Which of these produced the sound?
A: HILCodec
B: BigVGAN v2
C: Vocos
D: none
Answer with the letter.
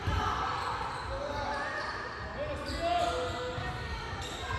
D